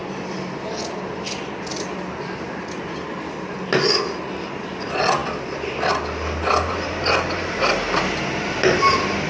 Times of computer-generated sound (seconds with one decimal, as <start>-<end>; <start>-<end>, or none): none